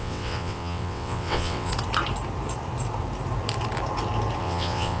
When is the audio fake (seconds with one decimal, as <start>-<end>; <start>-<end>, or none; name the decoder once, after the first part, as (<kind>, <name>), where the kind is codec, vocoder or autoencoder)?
0.0-1.7 (vocoder, WaveNeXt); 4.4-5.0